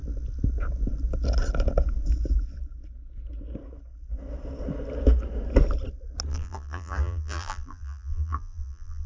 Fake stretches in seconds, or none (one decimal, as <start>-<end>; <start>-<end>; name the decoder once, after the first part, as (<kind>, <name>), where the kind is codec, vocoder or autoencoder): 6.3-9.1 (vocoder, BigVGAN v2)